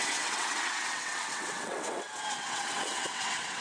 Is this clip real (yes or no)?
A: no